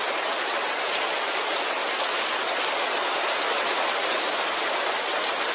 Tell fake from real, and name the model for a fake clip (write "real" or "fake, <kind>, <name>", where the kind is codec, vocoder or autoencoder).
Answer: real